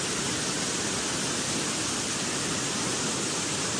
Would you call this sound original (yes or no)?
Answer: yes